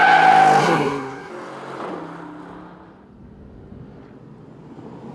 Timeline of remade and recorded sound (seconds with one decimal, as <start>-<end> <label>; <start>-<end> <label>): 0.0-0.6 recorded; 0.6-1.3 remade; 1.3-5.1 recorded